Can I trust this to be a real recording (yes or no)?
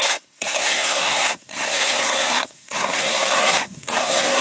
no